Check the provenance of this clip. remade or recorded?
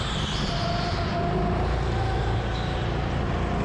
recorded